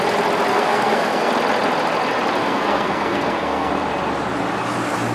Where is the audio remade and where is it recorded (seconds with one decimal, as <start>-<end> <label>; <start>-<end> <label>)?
0.0-0.5 recorded; 0.5-1.3 remade; 1.3-2.4 recorded; 2.4-3.7 remade; 3.7-5.1 recorded